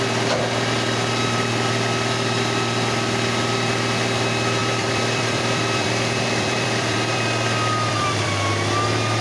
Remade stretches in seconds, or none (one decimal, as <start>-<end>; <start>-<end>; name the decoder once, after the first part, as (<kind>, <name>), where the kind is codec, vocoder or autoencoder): 4.6-8.5 (vocoder, BigVGAN v2)